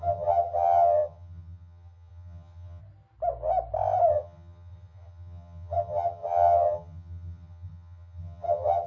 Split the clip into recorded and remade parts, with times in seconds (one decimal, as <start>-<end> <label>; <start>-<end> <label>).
0.0-2.8 remade; 2.8-4.1 recorded; 4.1-8.9 remade